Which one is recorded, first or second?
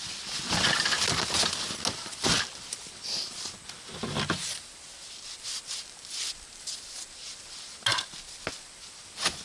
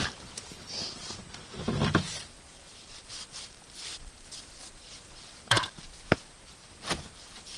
first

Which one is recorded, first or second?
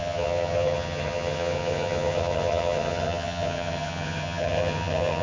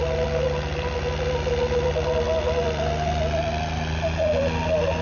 second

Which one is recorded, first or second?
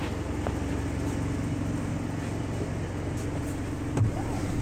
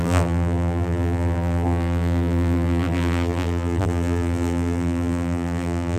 first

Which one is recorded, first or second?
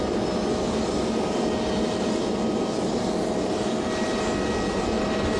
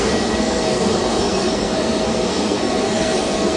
first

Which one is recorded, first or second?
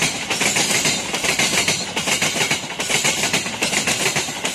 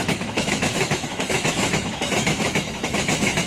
first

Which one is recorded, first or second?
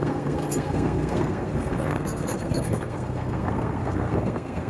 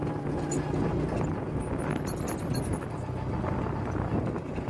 second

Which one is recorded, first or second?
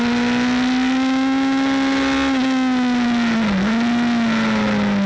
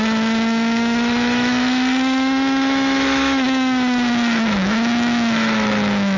first